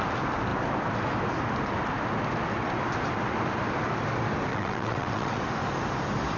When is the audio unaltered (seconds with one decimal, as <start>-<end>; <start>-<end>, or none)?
0.0-4.5; 5.4-6.4